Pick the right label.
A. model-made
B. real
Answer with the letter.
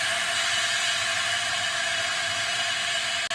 B